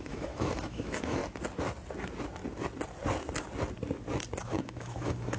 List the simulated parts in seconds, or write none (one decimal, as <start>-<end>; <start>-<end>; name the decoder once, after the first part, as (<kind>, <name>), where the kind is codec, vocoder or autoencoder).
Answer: 0.0-1.2 (autoencoder, DAC-VAE); 4.4-5.4

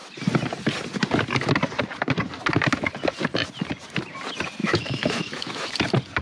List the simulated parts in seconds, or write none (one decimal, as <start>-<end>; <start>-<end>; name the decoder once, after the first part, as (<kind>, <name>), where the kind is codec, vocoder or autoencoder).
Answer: 4.6-5.7 (autoencoder, DAC-VAE)

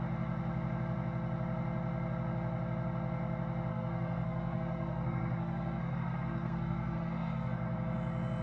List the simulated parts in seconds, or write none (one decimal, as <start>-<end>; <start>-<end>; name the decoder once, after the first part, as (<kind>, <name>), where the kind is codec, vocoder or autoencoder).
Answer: 3.7-7.5 (codec, SNAC)

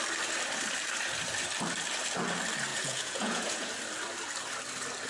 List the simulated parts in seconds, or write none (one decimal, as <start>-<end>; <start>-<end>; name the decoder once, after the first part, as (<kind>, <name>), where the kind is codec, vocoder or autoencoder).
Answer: 2.7-3.7 (vocoder, Vocos)

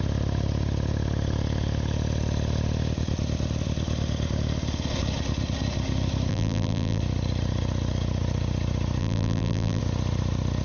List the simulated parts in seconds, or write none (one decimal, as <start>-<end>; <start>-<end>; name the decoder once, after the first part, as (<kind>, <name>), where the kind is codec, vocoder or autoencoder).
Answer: 6.3-7.0 (vocoder, BigVGAN v2); 9.0-9.8